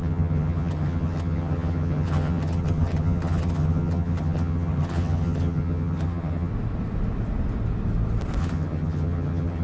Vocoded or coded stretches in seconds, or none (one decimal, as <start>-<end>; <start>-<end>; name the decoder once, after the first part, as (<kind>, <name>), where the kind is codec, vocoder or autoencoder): 0.0-6.5 (vocoder, HiFi-GAN); 8.4-9.6